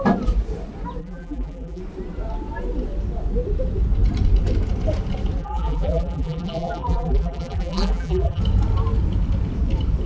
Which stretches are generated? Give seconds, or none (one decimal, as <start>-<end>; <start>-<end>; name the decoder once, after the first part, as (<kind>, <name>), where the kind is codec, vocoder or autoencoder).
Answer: 1.0-1.8 (vocoder, BigVGAN v2); 5.4-8.4